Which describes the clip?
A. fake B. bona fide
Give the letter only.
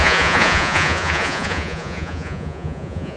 A